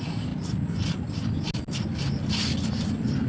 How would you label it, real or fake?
real